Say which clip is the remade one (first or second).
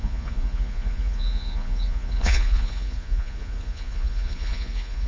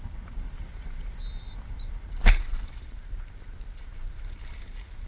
first